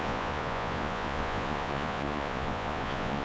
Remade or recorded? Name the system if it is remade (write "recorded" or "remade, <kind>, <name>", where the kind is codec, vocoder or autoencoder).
remade, vocoder, Vocos